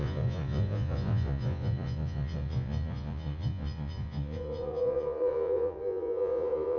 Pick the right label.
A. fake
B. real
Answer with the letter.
A